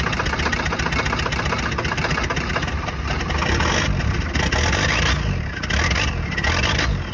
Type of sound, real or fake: real